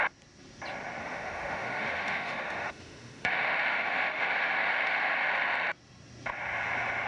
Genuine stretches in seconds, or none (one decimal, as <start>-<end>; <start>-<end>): 0.0-1.0; 5.3-7.1